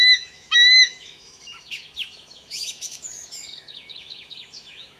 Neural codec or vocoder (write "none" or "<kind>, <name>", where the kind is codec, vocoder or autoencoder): autoencoder, DAC-VAE